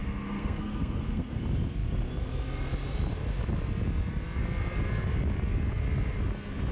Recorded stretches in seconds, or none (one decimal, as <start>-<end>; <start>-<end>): 1.4-6.7

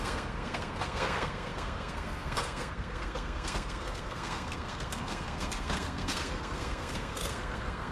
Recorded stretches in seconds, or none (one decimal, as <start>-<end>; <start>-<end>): none

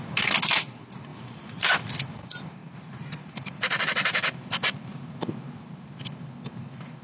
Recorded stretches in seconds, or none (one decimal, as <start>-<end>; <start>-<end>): 0.0-1.1; 1.7-2.6; 5.9-7.0

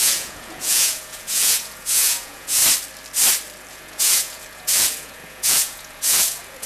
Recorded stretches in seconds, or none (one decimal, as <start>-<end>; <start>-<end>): 2.6-3.7